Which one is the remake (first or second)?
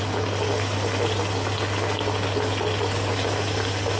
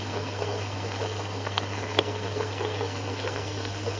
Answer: second